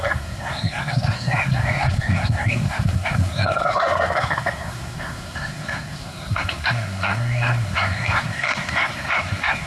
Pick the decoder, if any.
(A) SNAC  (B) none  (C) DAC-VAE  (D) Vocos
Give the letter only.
A